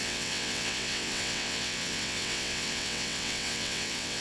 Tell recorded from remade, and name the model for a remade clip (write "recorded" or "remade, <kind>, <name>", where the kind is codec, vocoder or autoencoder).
remade, vocoder, WaveNeXt